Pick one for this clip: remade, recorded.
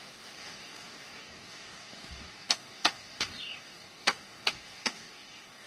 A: remade